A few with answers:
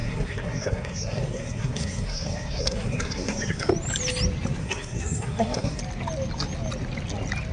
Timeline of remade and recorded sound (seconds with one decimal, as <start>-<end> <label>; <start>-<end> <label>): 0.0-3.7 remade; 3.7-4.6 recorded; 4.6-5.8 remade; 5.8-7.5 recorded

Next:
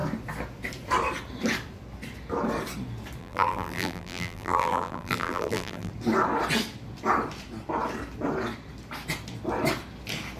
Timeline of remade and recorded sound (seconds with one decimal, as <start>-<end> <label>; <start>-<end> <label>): 0.0-3.2 recorded; 3.2-5.9 remade; 5.9-10.4 recorded

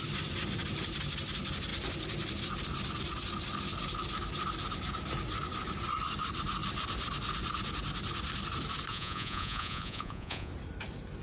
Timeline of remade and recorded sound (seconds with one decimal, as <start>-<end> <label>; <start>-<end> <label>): 0.0-8.9 recorded; 8.9-10.5 remade; 10.5-11.2 recorded

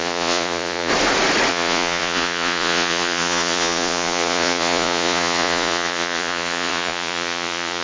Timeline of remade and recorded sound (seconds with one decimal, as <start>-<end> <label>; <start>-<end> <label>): 0.0-0.9 remade; 0.9-1.5 recorded; 1.5-7.8 remade